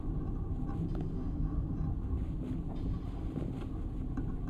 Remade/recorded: recorded